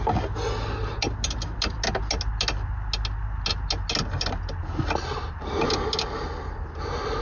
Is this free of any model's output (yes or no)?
yes